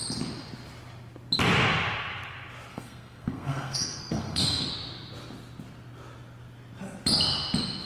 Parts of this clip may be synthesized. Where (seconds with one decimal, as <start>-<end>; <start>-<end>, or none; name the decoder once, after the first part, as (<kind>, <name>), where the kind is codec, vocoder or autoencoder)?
2.7-4.7 (codec, SNAC)